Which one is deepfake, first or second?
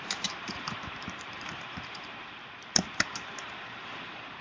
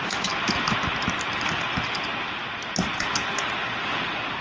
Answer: first